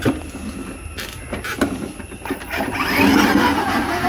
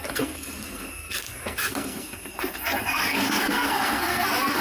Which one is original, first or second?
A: first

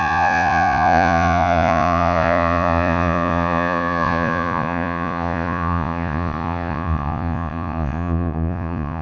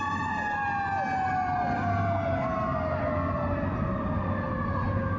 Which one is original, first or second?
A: second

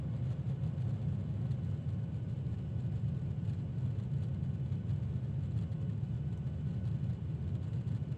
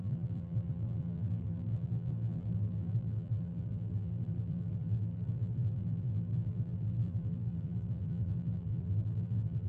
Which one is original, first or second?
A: first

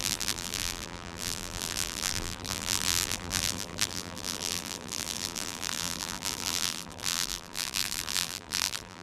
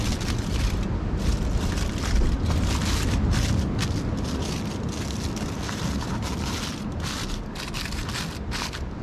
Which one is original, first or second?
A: second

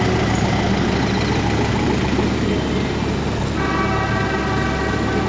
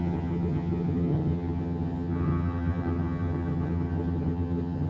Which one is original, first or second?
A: first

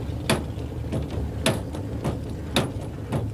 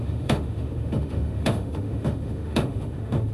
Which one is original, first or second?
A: first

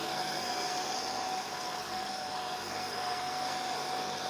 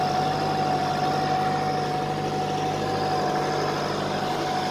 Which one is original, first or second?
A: second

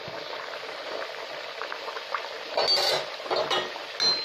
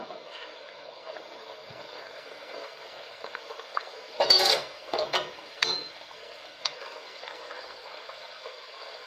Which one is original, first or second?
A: first